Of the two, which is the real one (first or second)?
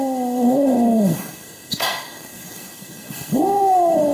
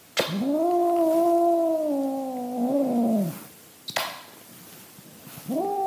second